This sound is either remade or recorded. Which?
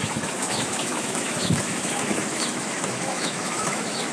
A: remade